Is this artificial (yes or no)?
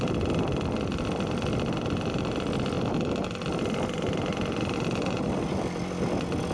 no